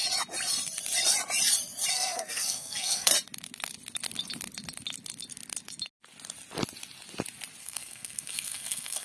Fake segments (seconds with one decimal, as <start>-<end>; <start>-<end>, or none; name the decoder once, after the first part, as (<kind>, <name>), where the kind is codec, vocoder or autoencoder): 1.9-3.1 (codec, SNAC); 7.6-9.0